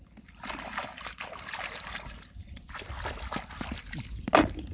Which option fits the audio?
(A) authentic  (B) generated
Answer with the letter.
A